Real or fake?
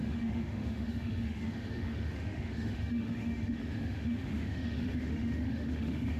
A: fake